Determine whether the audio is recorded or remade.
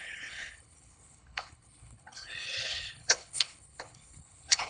remade